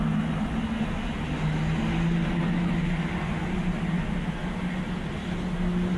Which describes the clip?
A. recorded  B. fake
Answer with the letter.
A